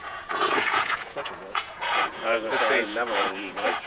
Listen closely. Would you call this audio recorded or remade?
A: remade